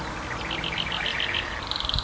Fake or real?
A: real